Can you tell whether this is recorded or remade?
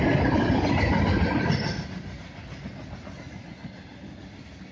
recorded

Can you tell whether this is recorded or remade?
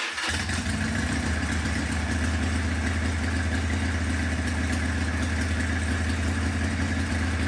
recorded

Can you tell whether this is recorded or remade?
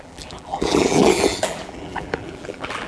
remade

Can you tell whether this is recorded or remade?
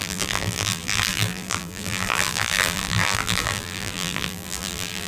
remade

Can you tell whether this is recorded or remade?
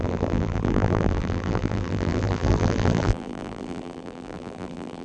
remade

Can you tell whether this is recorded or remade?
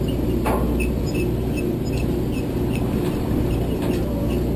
recorded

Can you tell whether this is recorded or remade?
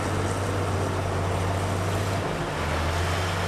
recorded